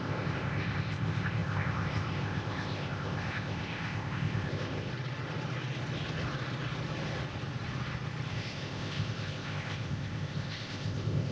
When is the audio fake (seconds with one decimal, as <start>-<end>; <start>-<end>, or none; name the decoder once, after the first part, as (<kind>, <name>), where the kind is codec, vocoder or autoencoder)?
0.0-4.9 (codec, ZipCodec); 8.3-11.3